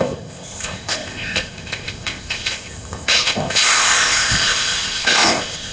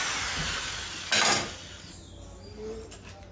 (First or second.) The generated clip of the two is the first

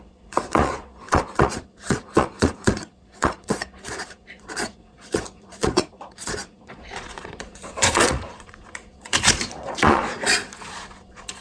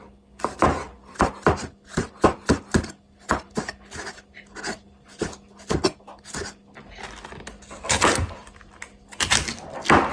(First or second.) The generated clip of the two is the first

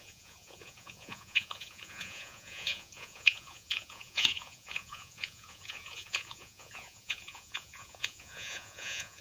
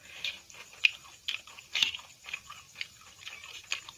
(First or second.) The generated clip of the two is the first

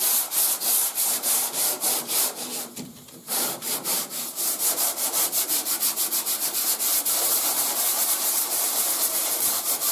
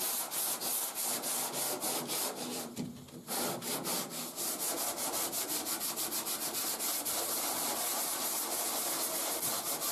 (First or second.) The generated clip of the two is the first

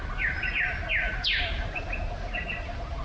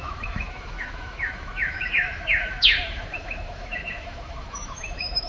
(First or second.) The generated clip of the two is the second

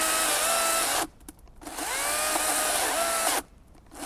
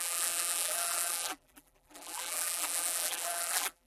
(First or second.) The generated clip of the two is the second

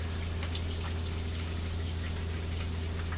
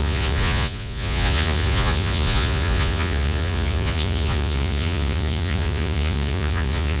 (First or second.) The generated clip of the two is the second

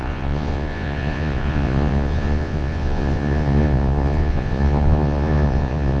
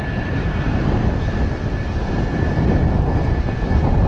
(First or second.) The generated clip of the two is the first